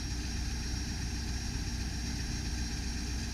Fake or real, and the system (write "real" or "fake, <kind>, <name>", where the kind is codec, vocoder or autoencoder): real